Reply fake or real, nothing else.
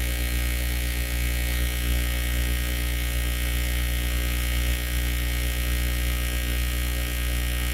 real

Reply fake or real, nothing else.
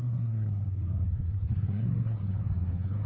fake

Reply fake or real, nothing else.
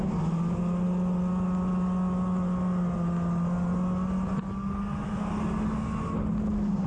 real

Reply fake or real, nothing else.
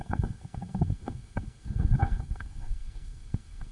fake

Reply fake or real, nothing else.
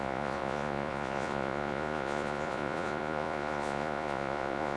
fake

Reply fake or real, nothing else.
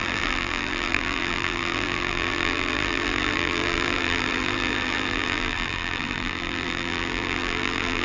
fake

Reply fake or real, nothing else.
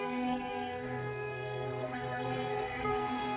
fake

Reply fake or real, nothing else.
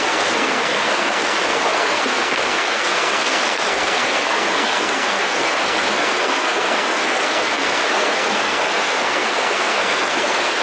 fake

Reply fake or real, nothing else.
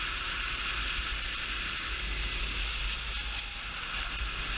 real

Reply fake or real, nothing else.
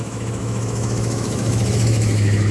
fake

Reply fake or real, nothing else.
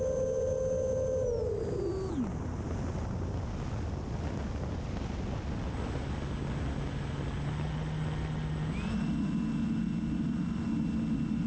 real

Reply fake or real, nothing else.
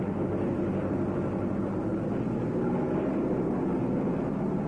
real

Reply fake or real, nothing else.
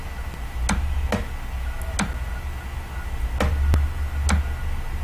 real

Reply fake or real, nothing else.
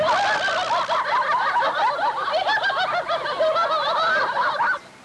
real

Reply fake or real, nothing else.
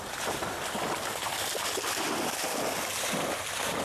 real